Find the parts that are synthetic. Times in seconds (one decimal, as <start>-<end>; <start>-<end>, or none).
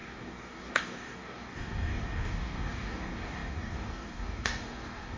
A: 0.0-5.2